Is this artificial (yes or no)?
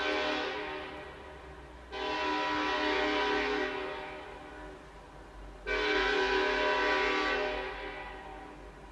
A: no